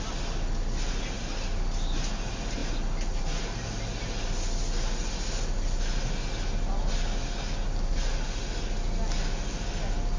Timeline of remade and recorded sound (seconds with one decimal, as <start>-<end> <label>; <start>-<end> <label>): 0.0-10.2 recorded